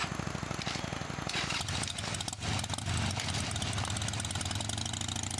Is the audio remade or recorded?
recorded